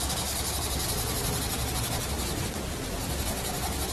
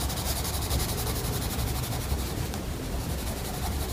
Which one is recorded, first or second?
first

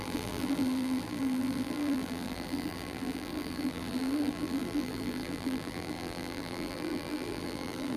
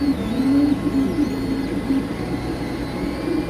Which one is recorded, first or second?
second